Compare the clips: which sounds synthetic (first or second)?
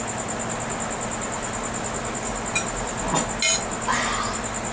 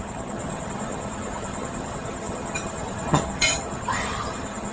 second